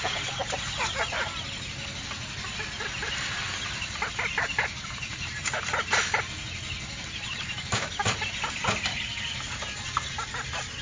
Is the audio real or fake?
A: real